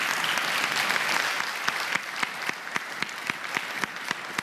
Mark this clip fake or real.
real